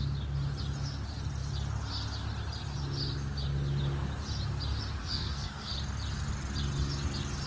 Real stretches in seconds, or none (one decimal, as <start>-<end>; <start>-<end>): 0.0-5.0; 5.7-7.5